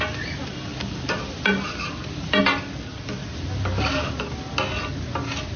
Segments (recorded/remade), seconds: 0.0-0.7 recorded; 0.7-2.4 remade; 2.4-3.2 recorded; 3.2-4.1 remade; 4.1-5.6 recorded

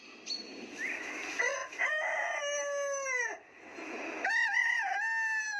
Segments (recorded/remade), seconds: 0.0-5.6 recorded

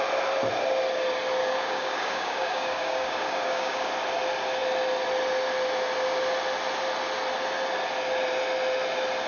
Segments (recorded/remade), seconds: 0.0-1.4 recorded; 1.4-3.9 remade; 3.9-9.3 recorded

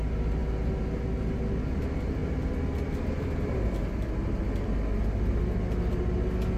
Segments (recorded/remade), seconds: 0.0-6.6 recorded

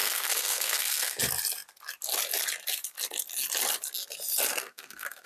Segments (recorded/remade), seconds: 0.0-1.2 remade; 1.2-4.6 recorded; 4.6-5.3 remade

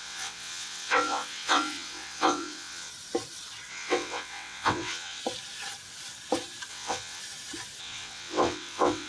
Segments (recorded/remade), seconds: 0.0-2.9 remade; 2.9-3.7 recorded; 3.7-5.2 remade; 5.2-6.7 recorded; 6.7-7.2 remade; 7.2-7.8 recorded; 7.8-9.1 remade